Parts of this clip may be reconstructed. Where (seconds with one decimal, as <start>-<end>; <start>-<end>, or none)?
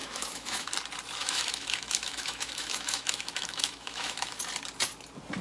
0.0-0.7; 1.2-4.4